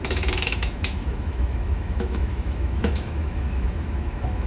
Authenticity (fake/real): fake